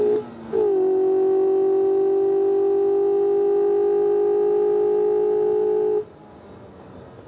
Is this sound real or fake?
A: real